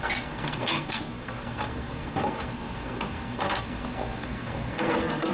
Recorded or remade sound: remade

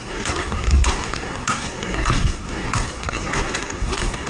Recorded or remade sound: remade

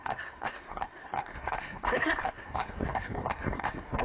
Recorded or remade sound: remade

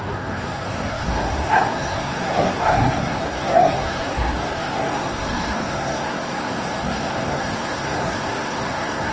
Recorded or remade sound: remade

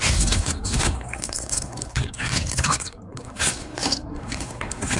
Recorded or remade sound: remade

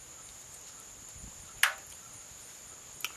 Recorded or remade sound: recorded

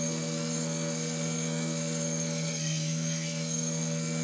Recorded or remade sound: remade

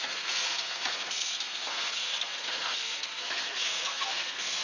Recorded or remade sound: remade